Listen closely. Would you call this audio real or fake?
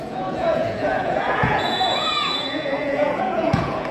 fake